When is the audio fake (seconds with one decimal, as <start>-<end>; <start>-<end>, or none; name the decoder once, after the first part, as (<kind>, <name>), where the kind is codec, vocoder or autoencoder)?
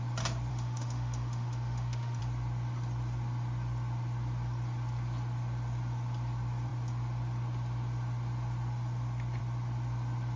0.5-2.2 (autoencoder, DAC-VAE)